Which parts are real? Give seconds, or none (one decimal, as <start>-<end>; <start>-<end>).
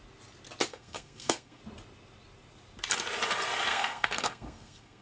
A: 0.0-0.7; 1.6-3.7